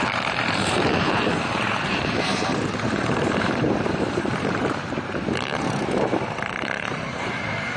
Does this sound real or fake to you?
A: fake